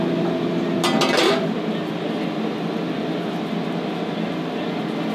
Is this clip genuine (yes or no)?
yes